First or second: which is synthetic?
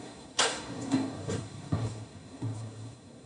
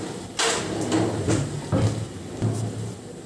first